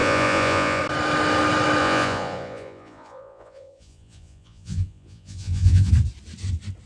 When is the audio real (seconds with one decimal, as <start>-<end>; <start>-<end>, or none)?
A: 0.8-1.8; 5.9-6.9